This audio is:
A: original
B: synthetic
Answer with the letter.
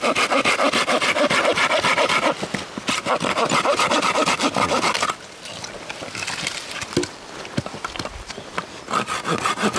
A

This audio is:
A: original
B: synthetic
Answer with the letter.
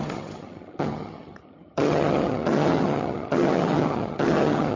B